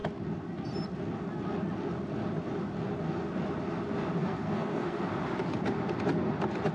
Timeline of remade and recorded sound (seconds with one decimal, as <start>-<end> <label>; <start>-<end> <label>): 0.0-4.2 recorded; 4.2-5.1 remade; 5.1-6.7 recorded